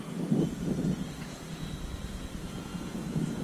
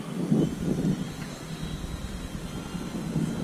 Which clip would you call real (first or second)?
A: second